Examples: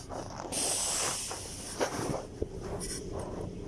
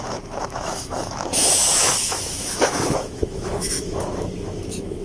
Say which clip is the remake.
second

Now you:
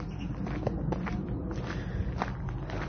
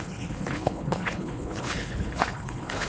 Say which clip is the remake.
second